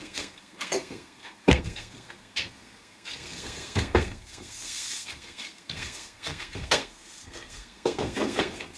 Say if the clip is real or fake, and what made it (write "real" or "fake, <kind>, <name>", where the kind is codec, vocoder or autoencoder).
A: fake, codec, SNAC